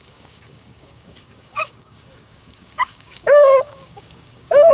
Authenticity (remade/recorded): remade